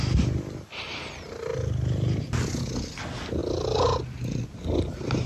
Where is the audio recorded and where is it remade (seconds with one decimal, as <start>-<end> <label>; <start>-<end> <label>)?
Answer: 0.0-5.3 recorded